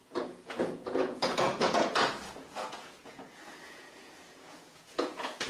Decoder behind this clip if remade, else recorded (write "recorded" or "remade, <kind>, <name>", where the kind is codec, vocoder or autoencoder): remade, vocoder, Vocos